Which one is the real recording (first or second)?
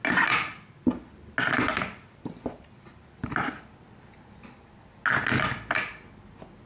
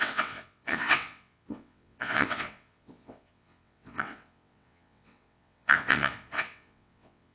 first